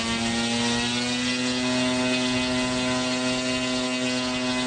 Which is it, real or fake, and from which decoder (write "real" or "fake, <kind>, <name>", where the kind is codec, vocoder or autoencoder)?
real